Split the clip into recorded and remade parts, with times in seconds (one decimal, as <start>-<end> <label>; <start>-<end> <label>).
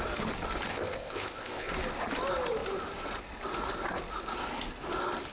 0.0-0.7 recorded; 0.7-1.7 remade; 1.7-5.3 recorded